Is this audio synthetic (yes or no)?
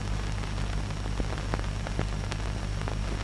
no